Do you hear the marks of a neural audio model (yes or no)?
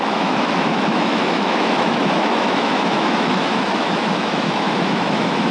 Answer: yes